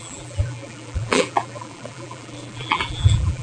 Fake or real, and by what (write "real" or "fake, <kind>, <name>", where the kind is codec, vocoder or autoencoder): fake, vocoder, BigVGAN v2